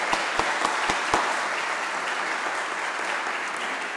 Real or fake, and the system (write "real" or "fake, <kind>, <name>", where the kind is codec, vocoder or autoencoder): real